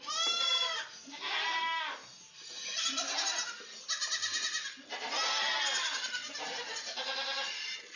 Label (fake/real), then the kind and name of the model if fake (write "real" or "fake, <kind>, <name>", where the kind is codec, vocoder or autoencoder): real